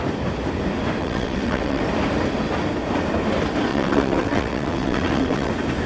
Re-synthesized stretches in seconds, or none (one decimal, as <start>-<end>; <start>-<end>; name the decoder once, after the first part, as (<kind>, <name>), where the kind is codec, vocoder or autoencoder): 1.0-1.8 (vocoder, WaveNeXt); 3.7-5.5